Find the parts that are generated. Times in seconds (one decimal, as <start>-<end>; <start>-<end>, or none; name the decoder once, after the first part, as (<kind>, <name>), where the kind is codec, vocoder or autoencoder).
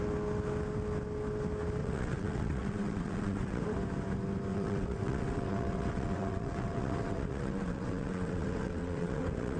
1.8-3.6 (vocoder, WaveNeXt); 4.5-9.6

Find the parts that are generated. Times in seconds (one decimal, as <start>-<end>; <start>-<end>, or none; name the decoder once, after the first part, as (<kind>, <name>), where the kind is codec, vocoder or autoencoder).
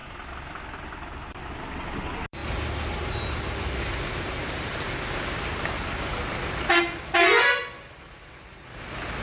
none